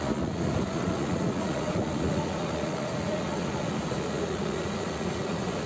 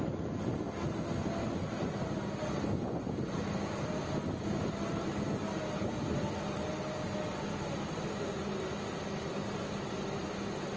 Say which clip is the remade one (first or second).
first